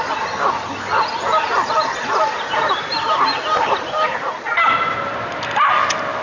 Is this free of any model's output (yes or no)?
yes